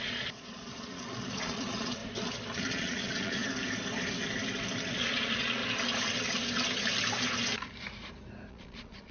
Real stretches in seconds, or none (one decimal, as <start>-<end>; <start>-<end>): 2.0-2.7; 3.4-4.9; 5.6-8.5